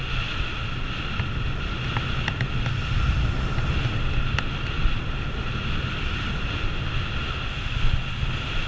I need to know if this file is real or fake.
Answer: real